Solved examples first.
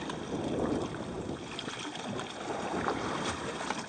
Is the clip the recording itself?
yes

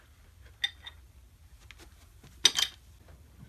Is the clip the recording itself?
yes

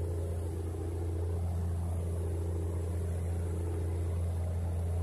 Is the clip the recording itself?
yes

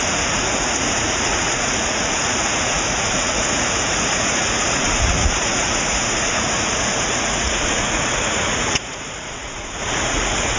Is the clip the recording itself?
no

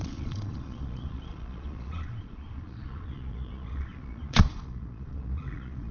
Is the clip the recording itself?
no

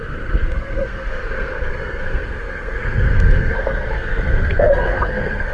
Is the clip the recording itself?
no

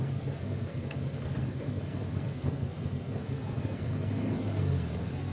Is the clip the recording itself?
no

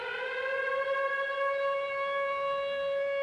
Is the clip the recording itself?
yes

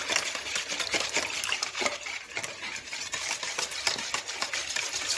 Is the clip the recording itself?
yes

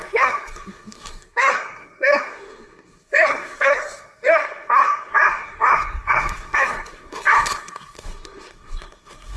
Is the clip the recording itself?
no